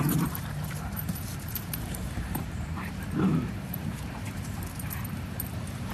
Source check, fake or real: fake